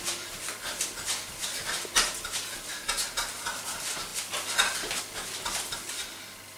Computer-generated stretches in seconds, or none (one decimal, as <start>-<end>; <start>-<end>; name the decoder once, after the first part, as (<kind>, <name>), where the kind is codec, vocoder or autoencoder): none